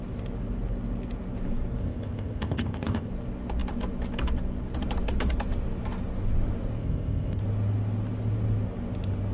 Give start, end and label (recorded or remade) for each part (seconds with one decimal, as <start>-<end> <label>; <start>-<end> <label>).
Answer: 0.0-1.8 recorded; 1.8-3.1 remade; 3.1-6.8 recorded; 6.8-7.4 remade; 7.4-9.3 recorded